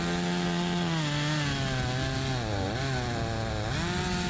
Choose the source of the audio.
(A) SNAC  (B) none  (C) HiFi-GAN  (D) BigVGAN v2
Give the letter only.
B